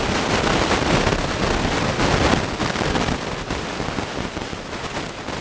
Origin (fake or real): real